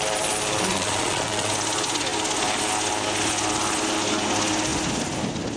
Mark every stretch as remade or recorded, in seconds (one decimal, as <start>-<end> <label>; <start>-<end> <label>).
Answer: 0.0-0.7 recorded; 0.7-1.5 remade; 1.5-5.6 recorded